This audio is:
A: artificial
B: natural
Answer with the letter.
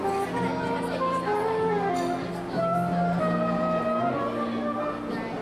B